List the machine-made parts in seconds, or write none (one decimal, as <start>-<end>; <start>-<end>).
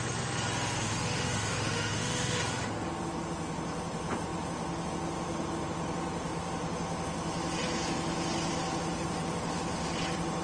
0.8-2.4